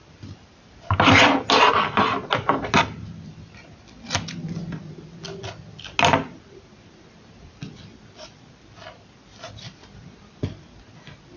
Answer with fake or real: real